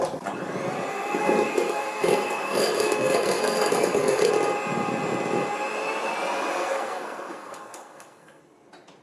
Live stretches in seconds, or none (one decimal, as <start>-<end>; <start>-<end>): 0.0-0.9; 4.3-6.5; 8.4-9.0